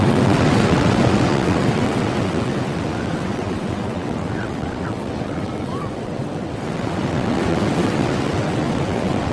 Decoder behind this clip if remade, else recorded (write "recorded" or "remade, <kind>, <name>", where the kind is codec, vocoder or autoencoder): remade, vocoder, WaveNeXt